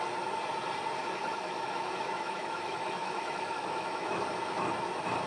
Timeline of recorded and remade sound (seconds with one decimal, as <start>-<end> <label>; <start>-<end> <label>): 0.0-1.0 recorded; 1.0-4.2 remade; 4.2-5.3 recorded